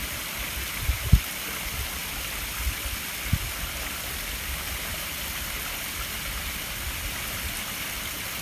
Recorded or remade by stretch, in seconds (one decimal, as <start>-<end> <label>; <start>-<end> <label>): 0.0-0.7 recorded; 0.7-2.0 remade; 2.0-6.9 recorded; 6.9-8.4 remade